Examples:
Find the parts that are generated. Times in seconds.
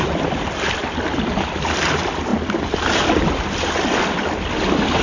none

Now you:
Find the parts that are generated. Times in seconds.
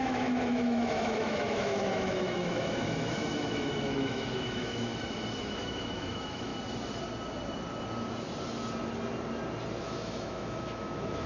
0.0-4.9 (autoencoder, DAC-VAE); 5.4-6.5; 9.8-11.3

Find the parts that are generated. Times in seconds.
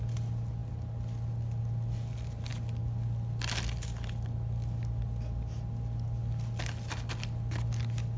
none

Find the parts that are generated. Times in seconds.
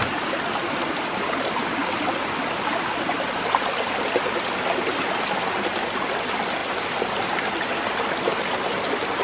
none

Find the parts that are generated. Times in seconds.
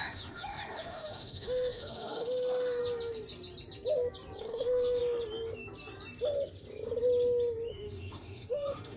0.0-2.8 (autoencoder, DAC-VAE); 4.4-5.0; 7.7-9.0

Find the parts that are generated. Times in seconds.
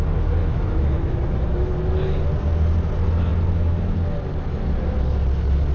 0.4-1.8 (autoencoder, DAC-VAE)